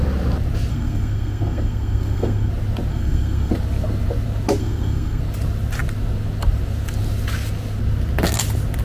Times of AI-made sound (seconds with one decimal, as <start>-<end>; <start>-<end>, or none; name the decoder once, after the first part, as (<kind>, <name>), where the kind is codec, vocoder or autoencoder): 0.7-2.5 (codec, SNAC); 2.9-3.5; 4.6-5.2